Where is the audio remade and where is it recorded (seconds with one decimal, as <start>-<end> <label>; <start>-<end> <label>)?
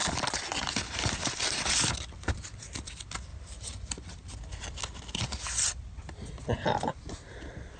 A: 0.0-7.8 recorded